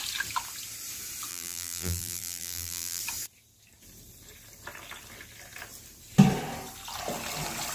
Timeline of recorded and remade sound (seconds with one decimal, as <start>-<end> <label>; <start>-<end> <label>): 0.0-1.3 recorded; 1.3-3.0 remade; 3.0-7.7 recorded

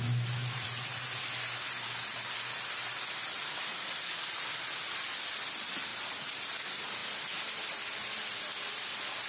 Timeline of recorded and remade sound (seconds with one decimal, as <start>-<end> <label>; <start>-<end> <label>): 0.0-0.4 recorded; 0.4-1.0 remade; 1.0-5.9 recorded; 5.9-6.4 remade; 6.4-9.3 recorded

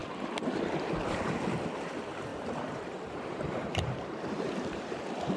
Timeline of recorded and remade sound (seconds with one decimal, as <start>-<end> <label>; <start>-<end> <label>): 0.0-2.3 recorded; 2.3-5.0 remade; 5.0-5.4 recorded